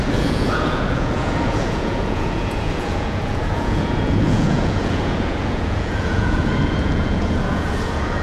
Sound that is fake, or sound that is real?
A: fake